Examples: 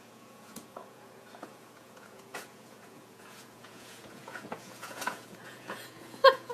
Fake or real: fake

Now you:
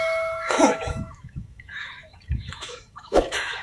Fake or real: fake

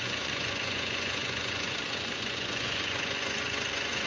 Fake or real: fake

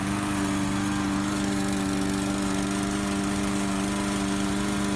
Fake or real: real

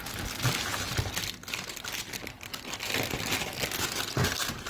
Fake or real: real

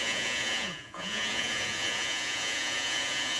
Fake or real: fake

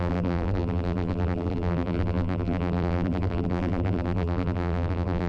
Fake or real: fake